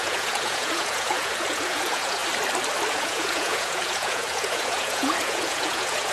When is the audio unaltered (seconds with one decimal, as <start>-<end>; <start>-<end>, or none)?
2.2-2.9

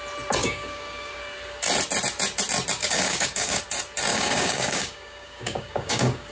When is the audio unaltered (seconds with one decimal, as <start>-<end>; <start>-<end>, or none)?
0.0-0.4; 1.2-2.8; 3.6-4.1